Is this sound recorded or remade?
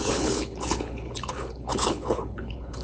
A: remade